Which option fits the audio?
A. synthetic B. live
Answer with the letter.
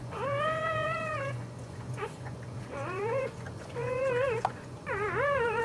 A